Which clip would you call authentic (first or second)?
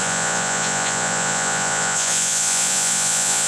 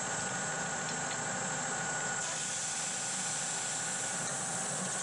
second